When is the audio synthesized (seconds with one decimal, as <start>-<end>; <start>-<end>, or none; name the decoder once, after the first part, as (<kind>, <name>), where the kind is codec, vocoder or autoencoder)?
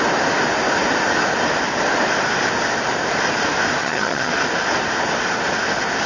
3.8-4.3 (vocoder, HiFi-GAN)